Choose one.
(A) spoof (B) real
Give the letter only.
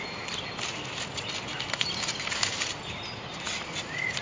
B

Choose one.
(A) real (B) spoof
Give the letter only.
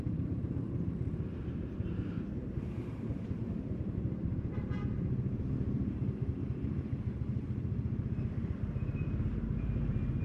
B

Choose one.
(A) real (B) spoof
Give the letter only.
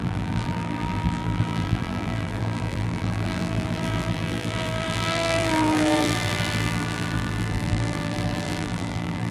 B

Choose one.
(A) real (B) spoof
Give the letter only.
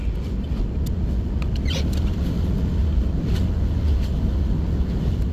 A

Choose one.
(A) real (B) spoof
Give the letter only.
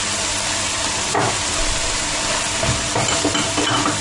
A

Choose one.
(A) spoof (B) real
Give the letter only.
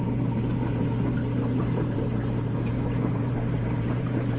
A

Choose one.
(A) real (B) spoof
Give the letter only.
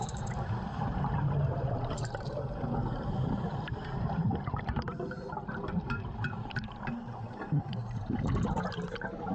B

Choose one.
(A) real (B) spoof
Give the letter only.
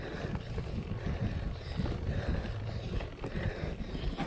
A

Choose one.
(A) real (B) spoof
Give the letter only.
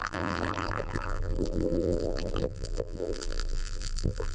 B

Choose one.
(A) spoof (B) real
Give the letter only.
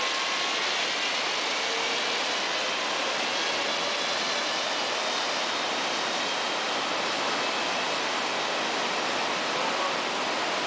B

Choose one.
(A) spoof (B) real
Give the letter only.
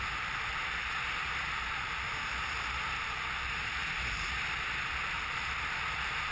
A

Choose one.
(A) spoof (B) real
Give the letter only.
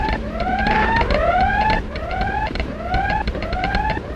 A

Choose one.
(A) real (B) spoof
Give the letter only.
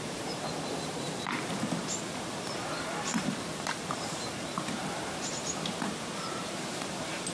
B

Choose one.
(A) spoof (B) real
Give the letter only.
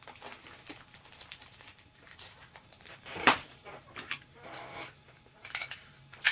A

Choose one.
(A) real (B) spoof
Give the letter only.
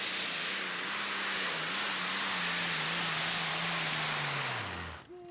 A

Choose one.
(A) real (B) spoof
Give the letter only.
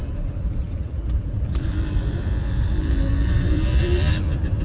B